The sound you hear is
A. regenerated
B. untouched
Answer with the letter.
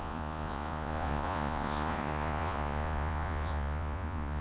A